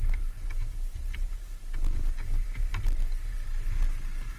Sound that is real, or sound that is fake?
real